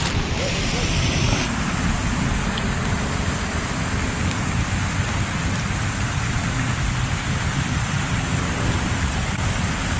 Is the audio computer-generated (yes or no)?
no